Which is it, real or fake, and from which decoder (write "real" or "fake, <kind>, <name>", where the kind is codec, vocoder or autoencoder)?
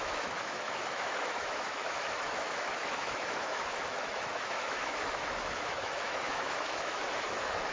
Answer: fake, autoencoder, DAC-VAE